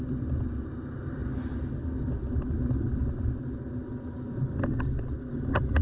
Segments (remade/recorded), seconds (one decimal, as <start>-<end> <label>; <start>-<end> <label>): 0.0-5.8 recorded